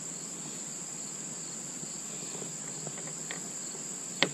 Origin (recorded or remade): recorded